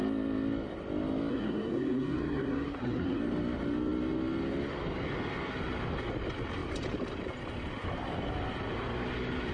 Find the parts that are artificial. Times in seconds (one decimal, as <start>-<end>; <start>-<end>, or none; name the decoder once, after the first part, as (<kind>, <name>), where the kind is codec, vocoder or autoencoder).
1.3-3.2 (codec, SNAC)